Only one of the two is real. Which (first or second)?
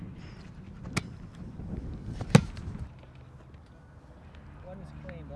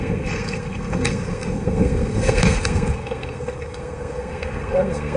first